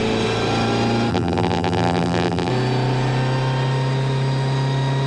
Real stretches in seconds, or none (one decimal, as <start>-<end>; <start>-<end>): 0.0-1.1; 2.5-5.1